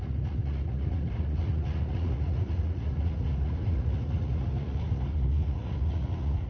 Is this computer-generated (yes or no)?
yes